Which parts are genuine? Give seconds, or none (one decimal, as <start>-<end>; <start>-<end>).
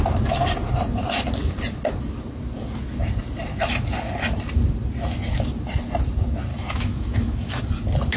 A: 0.0-6.5; 7.6-8.2